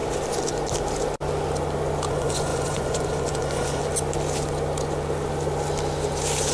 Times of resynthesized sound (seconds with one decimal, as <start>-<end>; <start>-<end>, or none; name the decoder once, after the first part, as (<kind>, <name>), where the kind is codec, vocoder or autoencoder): 2.1-3.8 (vocoder, Vocos)